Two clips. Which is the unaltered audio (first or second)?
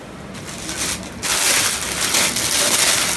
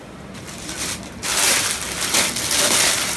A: first